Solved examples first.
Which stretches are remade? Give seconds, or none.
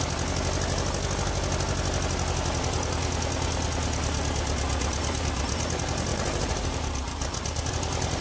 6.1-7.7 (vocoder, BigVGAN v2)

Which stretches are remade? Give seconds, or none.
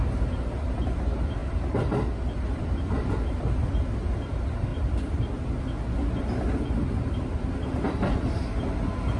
1.4-3.9 (vocoder, BigVGAN v2); 4.7-5.6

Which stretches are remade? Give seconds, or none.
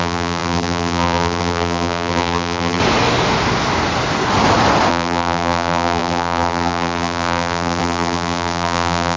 0.0-2.8 (vocoder, BigVGAN v2); 4.9-9.2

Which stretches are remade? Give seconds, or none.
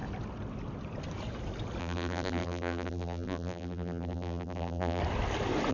1.8-5.0 (vocoder, BigVGAN v2)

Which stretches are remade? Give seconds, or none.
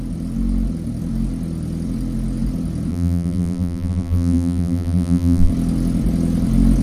2.9-5.5 (vocoder, BigVGAN v2)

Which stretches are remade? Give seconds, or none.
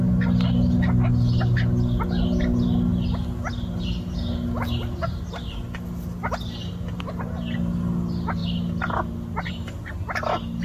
none